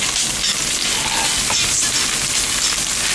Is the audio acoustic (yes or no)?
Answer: yes